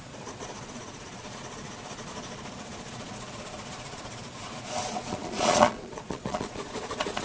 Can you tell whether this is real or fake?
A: fake